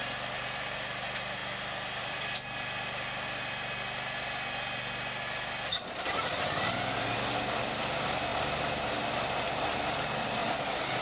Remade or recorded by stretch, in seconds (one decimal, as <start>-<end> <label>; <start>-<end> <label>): 0.0-1.4 recorded; 1.4-3.7 remade; 3.7-10.4 recorded; 10.4-11.0 remade